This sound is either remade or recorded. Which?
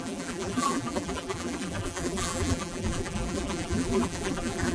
remade